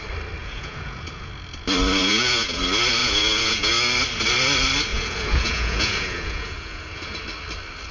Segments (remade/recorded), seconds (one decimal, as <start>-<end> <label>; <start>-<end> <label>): 0.0-0.4 recorded; 0.4-1.3 remade; 1.3-2.0 recorded; 2.0-2.6 remade; 2.6-3.0 recorded; 3.0-3.7 remade; 3.7-4.9 recorded; 4.9-7.2 remade; 7.2-7.9 recorded